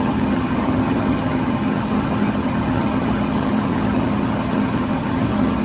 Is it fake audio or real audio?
fake